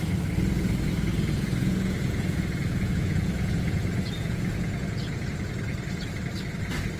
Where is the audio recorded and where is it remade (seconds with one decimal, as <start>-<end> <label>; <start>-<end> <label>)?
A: 0.0-1.1 recorded; 1.1-5.3 remade; 5.3-7.0 recorded